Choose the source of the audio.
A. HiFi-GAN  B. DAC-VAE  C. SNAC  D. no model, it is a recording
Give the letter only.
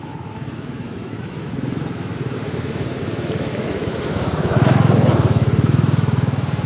B